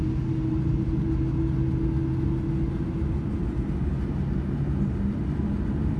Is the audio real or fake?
real